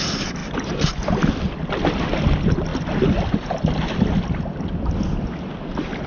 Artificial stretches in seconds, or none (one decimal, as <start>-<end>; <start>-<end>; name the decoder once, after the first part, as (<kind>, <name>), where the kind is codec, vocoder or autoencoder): none